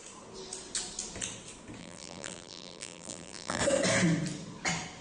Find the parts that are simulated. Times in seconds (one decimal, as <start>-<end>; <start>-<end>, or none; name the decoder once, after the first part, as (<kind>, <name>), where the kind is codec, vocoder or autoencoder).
1.8-3.6 (vocoder, BigVGAN v2)